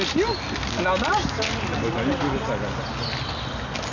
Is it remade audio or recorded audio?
recorded